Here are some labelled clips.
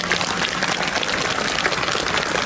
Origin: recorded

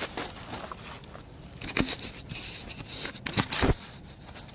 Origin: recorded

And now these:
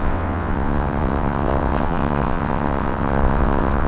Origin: remade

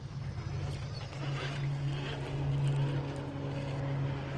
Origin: recorded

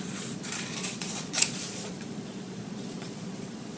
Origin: remade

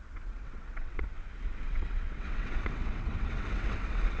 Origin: remade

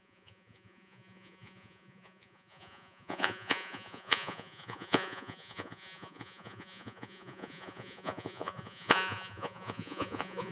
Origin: remade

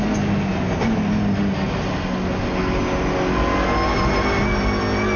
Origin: recorded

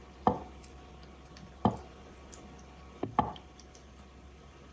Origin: recorded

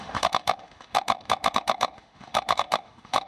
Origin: remade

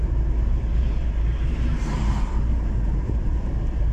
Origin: remade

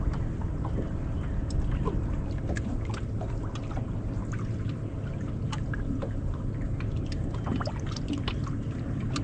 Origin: recorded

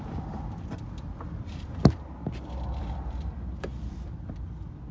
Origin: remade